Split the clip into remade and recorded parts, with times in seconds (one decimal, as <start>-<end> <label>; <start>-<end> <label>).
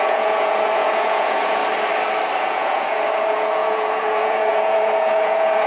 0.0-1.6 remade; 1.6-2.4 recorded; 2.4-5.7 remade